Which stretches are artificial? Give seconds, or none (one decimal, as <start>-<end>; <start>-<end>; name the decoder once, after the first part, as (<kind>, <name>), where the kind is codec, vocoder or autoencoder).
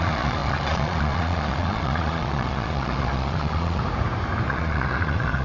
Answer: 0.0-3.8 (vocoder, Vocos); 4.5-5.4